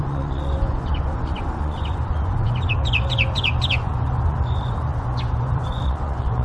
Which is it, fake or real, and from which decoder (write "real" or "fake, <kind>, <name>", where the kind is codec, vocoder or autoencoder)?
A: fake, vocoder, Vocos